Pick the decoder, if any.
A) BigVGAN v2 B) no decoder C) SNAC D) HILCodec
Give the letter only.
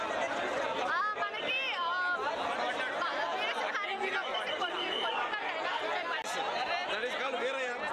B